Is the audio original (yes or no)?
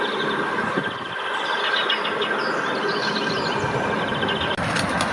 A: yes